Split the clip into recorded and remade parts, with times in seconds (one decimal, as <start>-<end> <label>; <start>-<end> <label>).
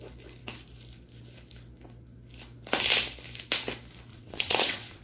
0.0-4.1 recorded; 4.1-5.0 remade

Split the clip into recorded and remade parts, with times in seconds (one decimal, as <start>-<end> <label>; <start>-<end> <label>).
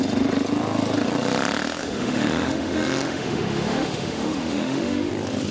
0.0-1.8 recorded; 1.8-5.1 remade; 5.1-5.5 recorded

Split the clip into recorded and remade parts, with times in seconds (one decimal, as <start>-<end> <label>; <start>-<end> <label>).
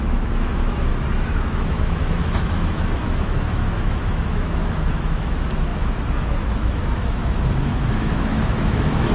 0.0-0.9 remade; 0.9-1.4 recorded; 1.4-9.1 remade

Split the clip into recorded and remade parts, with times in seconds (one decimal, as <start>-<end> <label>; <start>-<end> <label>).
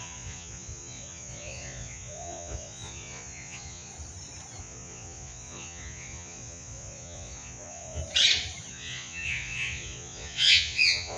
0.0-3.9 remade; 3.9-4.6 recorded; 4.6-8.0 remade; 8.0-8.7 recorded; 8.7-11.2 remade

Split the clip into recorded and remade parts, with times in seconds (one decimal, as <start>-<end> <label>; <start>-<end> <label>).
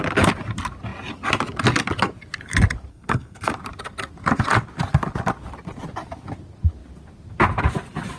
0.0-2.9 recorded; 2.9-3.5 remade; 3.5-8.2 recorded